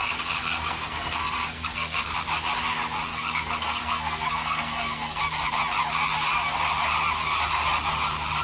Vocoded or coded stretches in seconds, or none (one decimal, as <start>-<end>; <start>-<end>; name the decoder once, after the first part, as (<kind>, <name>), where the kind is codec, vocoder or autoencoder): 0.0-2.1 (codec, SNAC); 3.1-5.2